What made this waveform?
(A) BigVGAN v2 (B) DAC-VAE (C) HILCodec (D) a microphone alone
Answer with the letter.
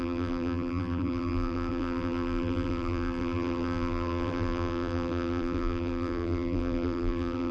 A